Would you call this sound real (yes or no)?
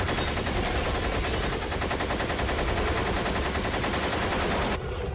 yes